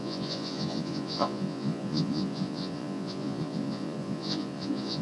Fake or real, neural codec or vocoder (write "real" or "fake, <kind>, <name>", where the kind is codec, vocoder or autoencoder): fake, vocoder, Vocos